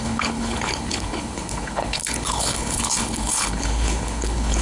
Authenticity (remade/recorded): remade